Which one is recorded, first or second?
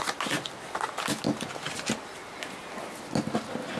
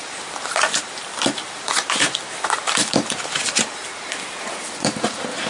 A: first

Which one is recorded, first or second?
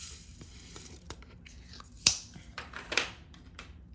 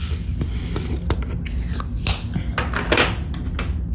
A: second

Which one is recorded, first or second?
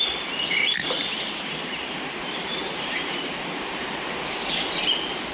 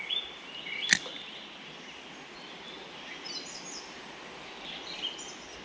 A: second